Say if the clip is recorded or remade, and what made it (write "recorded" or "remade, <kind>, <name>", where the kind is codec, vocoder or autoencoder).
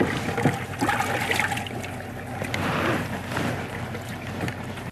recorded